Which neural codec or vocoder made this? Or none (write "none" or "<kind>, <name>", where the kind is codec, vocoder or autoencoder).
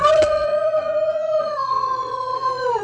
vocoder, Vocos